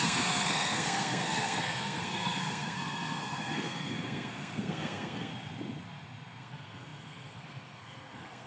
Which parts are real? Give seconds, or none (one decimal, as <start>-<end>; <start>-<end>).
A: 5.3-6.4